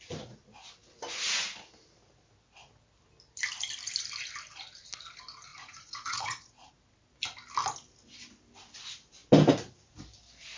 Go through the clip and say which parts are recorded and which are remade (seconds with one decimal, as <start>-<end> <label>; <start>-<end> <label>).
0.0-5.5 recorded; 5.5-6.7 remade; 6.7-10.6 recorded